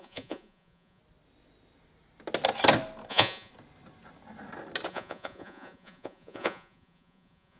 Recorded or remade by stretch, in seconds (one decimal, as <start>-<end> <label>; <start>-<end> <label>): 0.0-1.0 remade; 1.0-3.1 recorded; 3.1-3.5 remade; 3.5-4.9 recorded; 4.9-7.6 remade